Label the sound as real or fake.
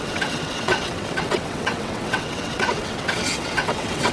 fake